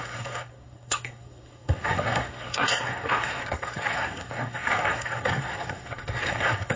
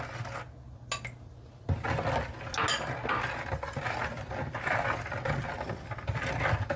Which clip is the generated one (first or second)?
first